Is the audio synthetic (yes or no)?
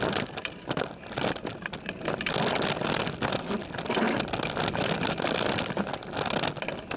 no